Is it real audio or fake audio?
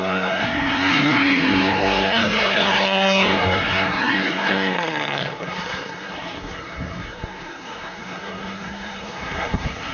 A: fake